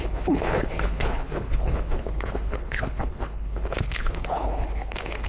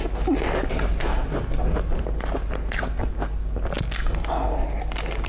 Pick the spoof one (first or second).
first